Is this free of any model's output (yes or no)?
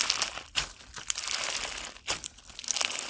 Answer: yes